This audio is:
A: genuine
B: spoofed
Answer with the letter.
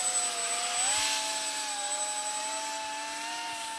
A